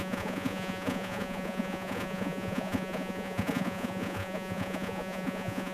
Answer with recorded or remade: remade